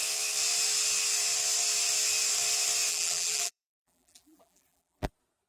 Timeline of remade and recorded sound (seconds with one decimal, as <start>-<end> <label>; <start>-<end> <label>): 0.0-2.9 recorded; 2.9-5.1 remade; 5.1-5.5 recorded